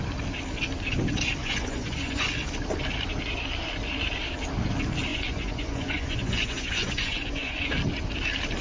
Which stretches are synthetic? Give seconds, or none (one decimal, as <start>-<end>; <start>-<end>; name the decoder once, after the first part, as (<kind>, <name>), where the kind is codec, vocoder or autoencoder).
1.4-2.3 (vocoder, Vocos); 5.1-7.7